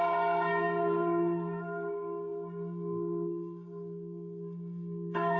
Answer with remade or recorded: remade